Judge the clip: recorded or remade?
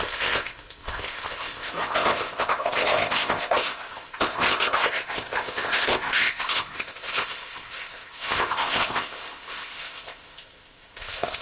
remade